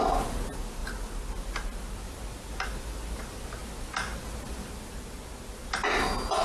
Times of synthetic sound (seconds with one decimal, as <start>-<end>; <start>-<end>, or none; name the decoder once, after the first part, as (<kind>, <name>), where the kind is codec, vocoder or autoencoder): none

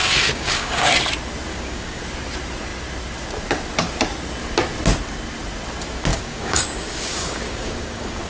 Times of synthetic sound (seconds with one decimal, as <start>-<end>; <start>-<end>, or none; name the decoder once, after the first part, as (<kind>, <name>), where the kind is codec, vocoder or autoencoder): 0.0-0.9 (codec, DAC); 1.5-2.0; 6.1-8.3

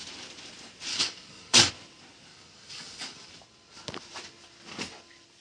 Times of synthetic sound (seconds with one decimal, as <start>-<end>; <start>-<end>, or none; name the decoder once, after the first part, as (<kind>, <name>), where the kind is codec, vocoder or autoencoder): 0.9-1.7 (codec, DAC); 2.3-3.3

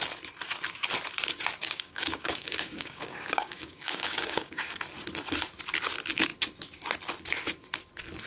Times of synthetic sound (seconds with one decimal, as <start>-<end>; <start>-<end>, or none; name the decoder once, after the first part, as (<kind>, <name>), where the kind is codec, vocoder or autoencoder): 1.6-4.8 (codec, DAC)

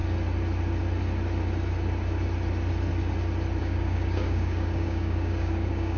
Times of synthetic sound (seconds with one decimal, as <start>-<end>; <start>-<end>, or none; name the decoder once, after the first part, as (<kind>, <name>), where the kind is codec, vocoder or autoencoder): 3.6-6.0 (codec, DAC)